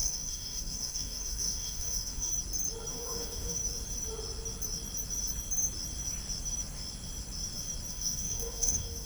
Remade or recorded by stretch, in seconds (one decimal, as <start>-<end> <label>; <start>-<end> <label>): 0.0-2.3 remade; 2.3-2.9 recorded; 2.9-3.6 remade; 3.6-7.9 recorded; 7.9-9.1 remade